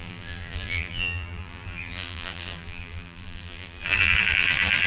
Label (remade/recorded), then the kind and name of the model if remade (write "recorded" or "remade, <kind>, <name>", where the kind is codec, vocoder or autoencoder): remade, vocoder, BigVGAN v2